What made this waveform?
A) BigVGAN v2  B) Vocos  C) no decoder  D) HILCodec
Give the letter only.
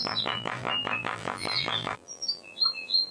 A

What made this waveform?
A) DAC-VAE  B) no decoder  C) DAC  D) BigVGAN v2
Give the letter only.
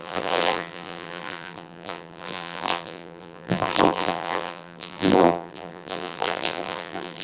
D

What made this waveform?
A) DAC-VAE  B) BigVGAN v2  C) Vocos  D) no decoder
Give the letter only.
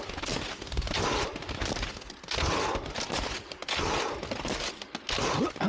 D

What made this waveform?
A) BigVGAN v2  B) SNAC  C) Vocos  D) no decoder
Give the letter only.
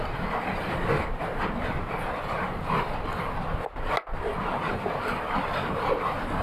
A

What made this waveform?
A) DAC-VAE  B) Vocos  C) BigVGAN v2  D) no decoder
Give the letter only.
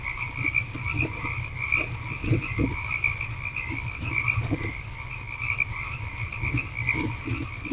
D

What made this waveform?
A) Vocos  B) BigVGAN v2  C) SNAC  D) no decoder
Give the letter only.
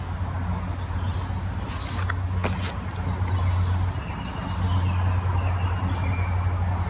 D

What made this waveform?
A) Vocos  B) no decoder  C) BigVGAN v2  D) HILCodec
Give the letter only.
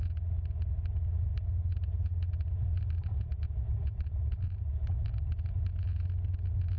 B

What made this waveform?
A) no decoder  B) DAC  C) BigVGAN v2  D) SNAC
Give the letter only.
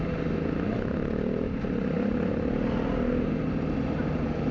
A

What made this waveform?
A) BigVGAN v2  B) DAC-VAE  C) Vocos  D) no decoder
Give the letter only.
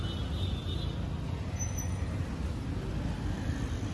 D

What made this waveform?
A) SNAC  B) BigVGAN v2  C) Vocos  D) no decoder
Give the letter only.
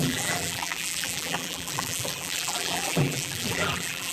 B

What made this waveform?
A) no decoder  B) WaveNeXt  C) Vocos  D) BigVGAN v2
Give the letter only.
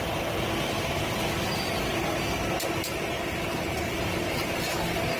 A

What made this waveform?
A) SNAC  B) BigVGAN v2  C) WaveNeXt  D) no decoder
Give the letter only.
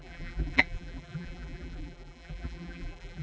B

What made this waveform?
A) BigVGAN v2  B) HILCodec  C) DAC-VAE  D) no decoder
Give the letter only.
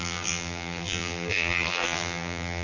A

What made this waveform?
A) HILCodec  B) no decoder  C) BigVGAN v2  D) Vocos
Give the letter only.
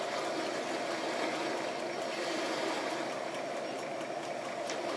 B